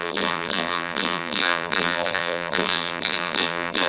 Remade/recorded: remade